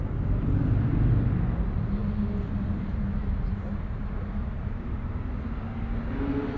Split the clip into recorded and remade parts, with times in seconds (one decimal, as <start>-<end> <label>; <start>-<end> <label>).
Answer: 0.0-3.2 recorded; 3.2-5.4 remade; 5.4-6.6 recorded